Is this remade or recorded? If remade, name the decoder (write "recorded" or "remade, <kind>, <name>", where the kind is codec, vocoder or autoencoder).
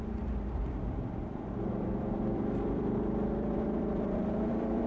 remade, vocoder, BigVGAN v2